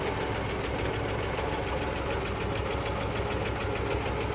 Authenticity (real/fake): real